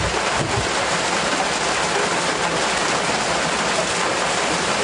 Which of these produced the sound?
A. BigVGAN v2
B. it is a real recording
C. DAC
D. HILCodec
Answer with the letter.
B